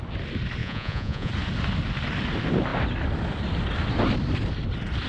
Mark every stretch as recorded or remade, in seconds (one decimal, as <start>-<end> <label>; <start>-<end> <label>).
0.0-0.6 recorded; 0.6-1.3 remade; 1.3-5.1 recorded